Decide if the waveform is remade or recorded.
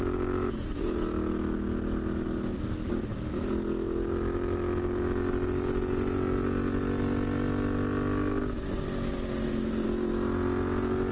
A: recorded